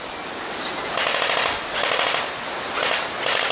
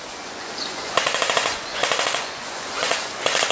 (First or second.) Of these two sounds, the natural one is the first